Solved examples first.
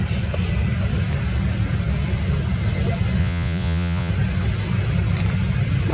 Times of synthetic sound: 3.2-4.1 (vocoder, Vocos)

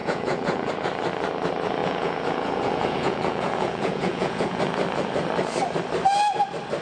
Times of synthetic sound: 0.0-0.7 (vocoder, Vocos); 1.8-4.6

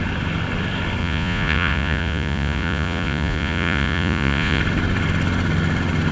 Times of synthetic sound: 1.0-4.6 (vocoder, Vocos)

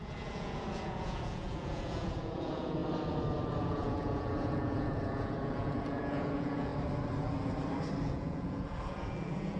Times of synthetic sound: 0.0-2.8 (vocoder, Vocos); 3.6-6.7; 8.0-9.6

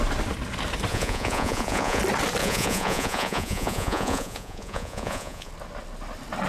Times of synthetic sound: 0.9-2.0 (vocoder, Vocos); 2.4-5.5

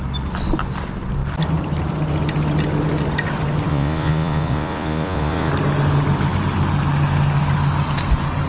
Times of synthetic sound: 3.7-5.5 (vocoder, Vocos)